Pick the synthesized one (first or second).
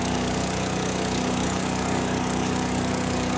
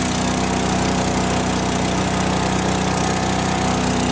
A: first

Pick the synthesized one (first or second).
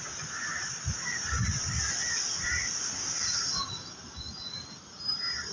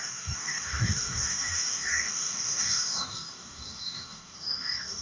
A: second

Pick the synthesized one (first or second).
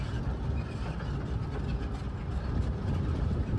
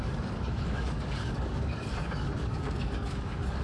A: second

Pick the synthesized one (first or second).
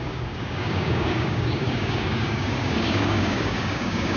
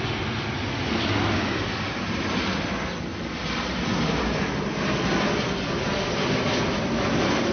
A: first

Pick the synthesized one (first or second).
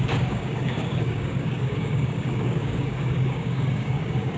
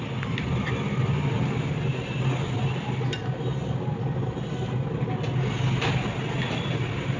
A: first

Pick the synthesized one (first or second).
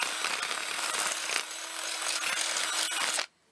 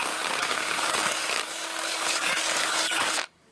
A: second